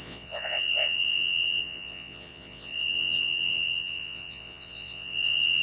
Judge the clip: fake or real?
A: fake